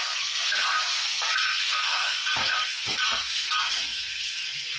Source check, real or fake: fake